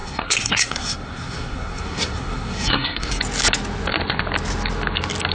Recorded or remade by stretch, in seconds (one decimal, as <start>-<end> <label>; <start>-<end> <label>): 0.0-3.2 remade; 3.2-5.3 recorded